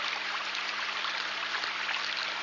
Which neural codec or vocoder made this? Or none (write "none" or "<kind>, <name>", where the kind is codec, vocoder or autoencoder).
none